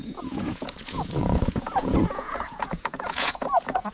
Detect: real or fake fake